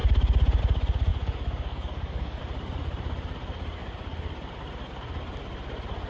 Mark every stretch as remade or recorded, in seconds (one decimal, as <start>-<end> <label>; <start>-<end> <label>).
0.0-1.1 recorded; 1.1-2.4 remade; 2.4-6.1 recorded